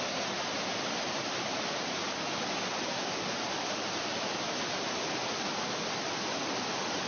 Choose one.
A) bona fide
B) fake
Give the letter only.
A